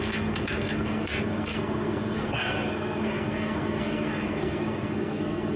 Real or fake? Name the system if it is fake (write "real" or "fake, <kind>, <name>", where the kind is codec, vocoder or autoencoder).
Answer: fake, codec, SNAC